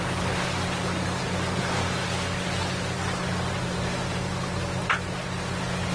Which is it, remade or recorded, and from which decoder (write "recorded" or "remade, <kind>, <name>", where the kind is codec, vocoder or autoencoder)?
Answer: recorded